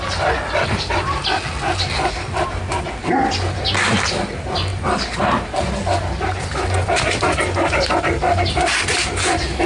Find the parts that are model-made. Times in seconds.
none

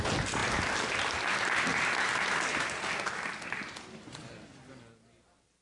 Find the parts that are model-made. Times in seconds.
1.7-4.3

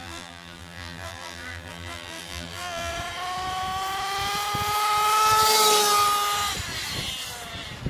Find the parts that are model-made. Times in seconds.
0.0-2.9

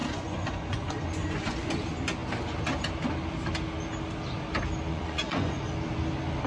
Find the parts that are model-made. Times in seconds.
0.0-1.7; 4.9-5.7

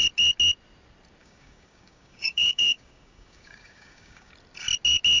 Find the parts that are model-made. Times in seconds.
1.2-4.3